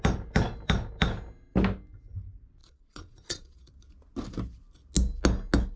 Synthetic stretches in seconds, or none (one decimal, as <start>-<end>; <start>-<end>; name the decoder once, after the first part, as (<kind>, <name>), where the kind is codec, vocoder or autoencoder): 2.6-3.7 (vocoder, Vocos)